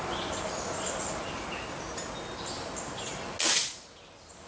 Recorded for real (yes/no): yes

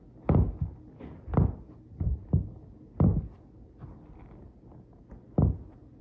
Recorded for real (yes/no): yes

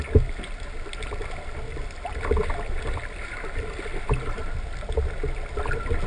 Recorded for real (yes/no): yes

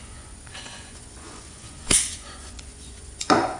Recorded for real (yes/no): no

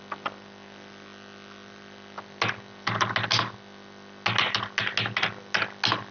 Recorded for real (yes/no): yes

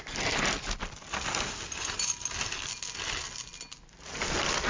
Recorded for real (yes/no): yes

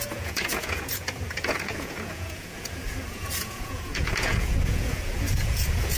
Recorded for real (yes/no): no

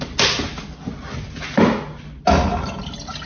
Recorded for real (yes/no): yes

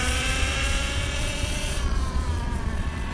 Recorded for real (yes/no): no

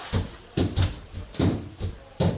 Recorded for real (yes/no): yes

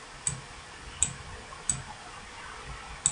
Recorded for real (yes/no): yes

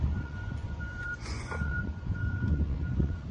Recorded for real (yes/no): no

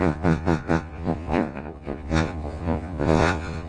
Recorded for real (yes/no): no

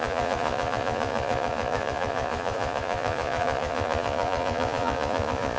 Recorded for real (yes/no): no